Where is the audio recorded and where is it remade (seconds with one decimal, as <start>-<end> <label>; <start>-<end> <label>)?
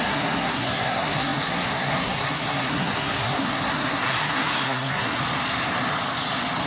0.0-5.2 remade; 5.2-6.7 recorded